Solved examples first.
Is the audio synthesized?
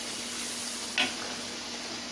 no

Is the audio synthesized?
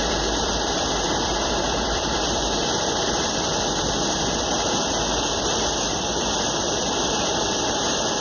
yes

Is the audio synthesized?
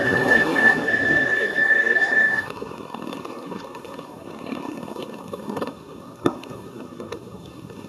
yes